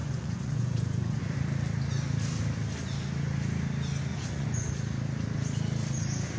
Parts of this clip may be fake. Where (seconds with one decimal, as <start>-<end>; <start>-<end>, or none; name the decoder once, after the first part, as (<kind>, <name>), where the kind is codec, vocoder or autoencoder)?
0.0-1.2 (vocoder, Vocos); 4.1-4.7